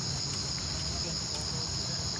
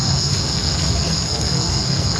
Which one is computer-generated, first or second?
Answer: second